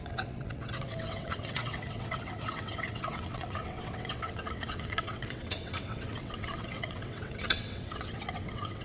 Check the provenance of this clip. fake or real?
fake